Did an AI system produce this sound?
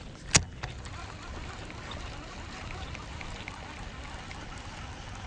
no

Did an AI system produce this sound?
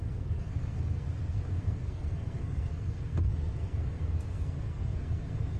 yes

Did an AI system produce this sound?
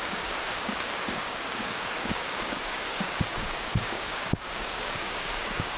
yes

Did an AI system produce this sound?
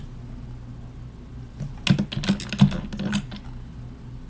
no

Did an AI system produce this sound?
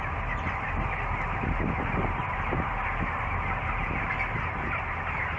no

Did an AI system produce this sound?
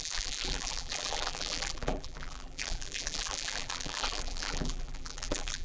yes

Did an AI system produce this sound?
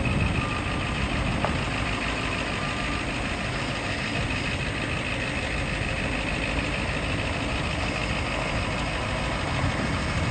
no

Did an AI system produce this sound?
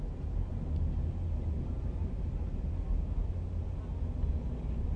no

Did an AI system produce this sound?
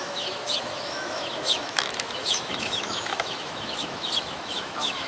yes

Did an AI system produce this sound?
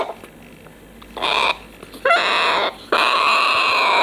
no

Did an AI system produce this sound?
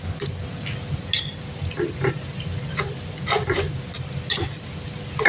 no